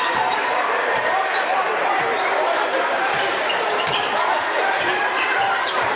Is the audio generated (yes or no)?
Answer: yes